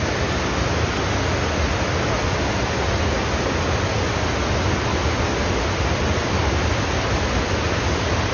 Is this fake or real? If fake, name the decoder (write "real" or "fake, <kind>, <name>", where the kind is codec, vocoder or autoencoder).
real